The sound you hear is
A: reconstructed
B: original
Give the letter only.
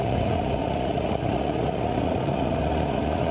A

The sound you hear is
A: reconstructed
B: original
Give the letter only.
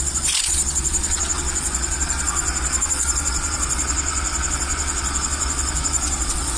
A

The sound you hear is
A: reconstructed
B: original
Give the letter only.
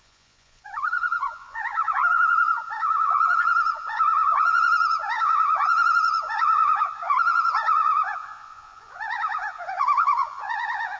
A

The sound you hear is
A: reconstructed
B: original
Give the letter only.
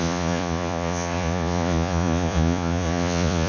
A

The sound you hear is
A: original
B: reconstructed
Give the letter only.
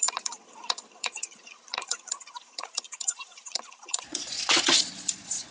B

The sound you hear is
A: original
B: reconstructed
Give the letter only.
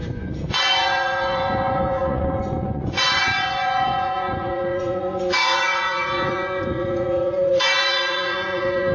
B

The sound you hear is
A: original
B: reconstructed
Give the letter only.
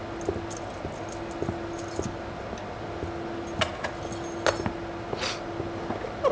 A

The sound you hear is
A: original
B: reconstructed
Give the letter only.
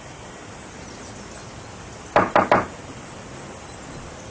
A